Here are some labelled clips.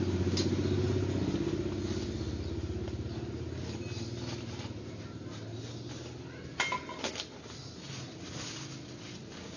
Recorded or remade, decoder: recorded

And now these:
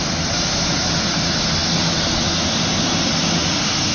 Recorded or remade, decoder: recorded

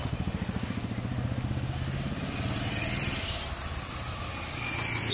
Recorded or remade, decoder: recorded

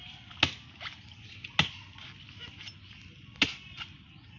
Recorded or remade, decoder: recorded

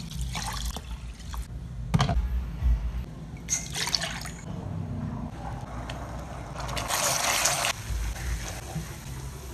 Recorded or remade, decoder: recorded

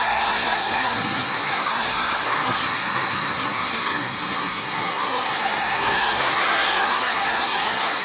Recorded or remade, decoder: remade, codec, SNAC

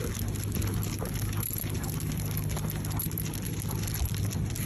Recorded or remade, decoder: recorded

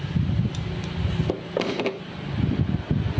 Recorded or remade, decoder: recorded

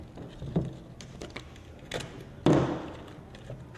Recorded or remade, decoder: recorded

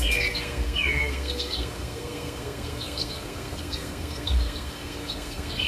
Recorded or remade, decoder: remade, codec, SNAC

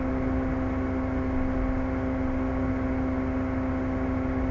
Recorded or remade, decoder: recorded